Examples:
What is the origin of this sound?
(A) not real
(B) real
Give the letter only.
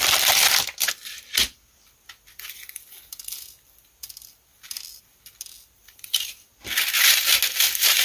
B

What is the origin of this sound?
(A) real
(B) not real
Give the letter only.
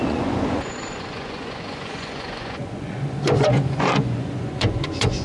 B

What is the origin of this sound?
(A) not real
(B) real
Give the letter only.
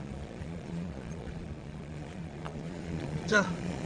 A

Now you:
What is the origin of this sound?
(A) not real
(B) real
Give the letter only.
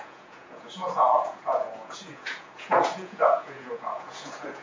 A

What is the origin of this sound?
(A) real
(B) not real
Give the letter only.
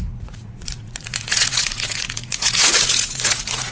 B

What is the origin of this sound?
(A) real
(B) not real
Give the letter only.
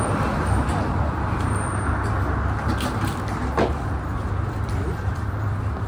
A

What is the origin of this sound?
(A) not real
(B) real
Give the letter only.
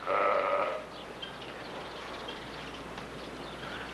B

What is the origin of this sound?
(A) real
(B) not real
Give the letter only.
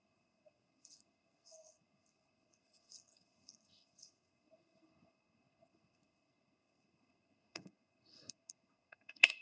B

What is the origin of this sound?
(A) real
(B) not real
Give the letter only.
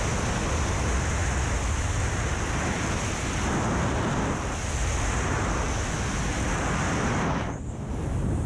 A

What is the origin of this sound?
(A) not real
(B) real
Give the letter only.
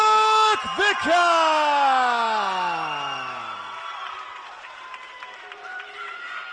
B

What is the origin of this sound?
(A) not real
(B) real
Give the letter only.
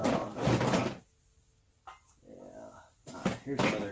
B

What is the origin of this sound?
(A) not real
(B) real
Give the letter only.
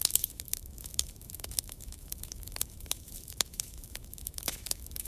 A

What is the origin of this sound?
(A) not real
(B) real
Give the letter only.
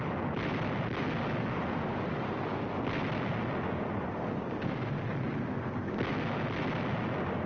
B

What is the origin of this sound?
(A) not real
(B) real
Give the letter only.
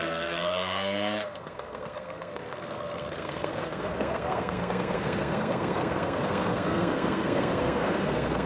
A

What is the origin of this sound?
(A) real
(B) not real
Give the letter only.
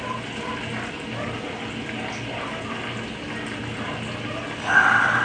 A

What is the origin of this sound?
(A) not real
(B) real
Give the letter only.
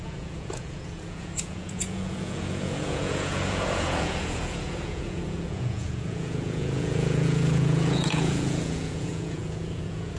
A